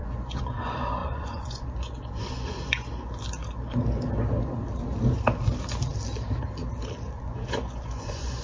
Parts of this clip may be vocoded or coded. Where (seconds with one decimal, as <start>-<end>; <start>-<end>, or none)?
0.0-2.9; 7.1-8.4